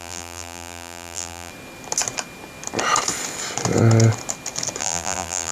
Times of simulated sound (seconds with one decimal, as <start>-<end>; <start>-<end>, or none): 0.0-1.5; 4.8-5.5